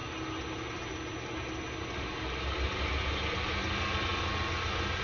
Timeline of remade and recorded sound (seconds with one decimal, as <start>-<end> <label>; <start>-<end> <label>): 0.0-5.0 recorded